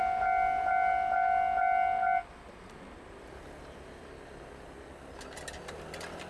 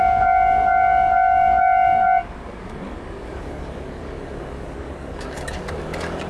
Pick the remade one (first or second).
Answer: second